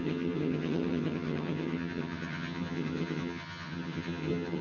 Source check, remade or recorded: remade